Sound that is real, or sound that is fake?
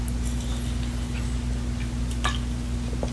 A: real